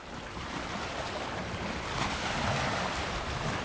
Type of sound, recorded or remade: recorded